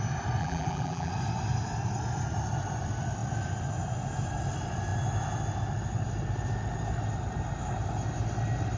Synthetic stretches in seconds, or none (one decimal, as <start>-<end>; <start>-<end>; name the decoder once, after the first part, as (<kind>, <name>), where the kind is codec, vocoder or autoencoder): 0.4-1.1 (vocoder, BigVGAN v2)